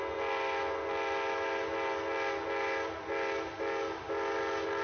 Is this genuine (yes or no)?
yes